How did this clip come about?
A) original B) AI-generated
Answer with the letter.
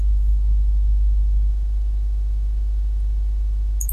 A